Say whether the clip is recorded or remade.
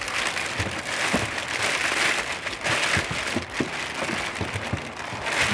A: recorded